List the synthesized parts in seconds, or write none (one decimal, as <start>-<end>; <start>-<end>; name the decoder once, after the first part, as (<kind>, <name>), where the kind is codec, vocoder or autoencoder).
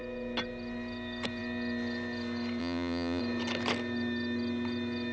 2.6-3.2 (vocoder, Vocos)